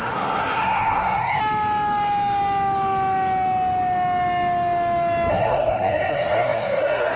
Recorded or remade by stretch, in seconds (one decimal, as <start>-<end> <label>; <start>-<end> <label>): 0.0-1.4 remade; 1.4-5.3 recorded; 5.3-7.2 remade